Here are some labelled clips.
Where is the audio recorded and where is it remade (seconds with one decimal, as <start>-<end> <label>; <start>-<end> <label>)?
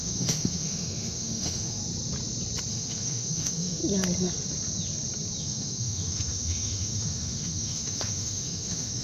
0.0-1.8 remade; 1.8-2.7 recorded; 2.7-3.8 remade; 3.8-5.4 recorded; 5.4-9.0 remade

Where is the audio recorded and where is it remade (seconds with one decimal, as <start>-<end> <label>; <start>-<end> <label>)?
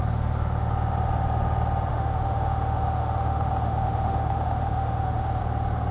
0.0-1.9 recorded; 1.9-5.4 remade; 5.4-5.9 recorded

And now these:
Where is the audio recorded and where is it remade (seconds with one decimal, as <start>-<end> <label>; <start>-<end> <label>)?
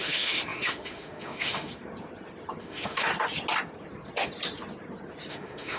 0.0-1.7 remade; 1.7-2.6 recorded; 2.6-3.1 remade; 3.1-5.3 recorded; 5.3-5.8 remade